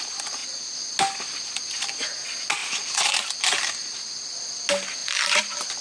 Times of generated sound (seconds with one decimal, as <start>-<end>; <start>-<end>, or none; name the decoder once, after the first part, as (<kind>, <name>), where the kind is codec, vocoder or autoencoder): 2.6-3.7 (vocoder, BigVGAN v2); 5.0-5.8